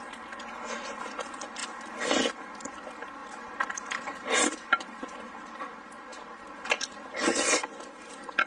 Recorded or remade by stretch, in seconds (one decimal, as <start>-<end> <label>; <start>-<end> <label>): 0.0-8.5 recorded

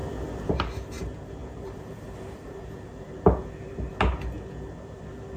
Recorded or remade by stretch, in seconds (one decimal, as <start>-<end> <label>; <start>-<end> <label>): 0.0-3.9 remade; 3.9-4.7 recorded; 4.7-5.4 remade

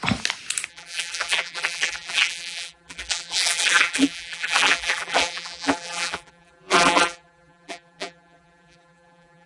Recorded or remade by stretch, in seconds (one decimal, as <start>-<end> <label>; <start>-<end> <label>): 0.0-0.7 recorded; 0.7-9.5 remade

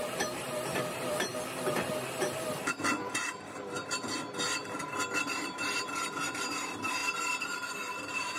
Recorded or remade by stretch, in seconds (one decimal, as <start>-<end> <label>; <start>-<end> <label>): 0.0-1.3 remade; 1.3-5.3 recorded; 5.3-7.0 remade; 7.0-7.7 recorded; 7.7-8.4 remade

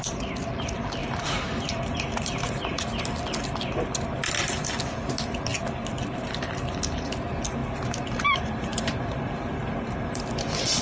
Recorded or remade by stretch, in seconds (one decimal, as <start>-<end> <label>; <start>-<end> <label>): 0.0-1.0 recorded; 1.0-2.9 remade; 2.9-7.6 recorded; 7.6-10.3 remade; 10.3-10.8 recorded

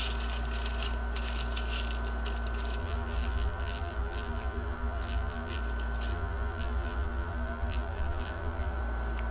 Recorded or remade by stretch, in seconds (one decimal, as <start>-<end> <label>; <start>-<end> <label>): 0.0-2.8 recorded; 2.8-5.6 remade; 5.6-6.1 recorded; 6.1-8.8 remade; 8.8-9.3 recorded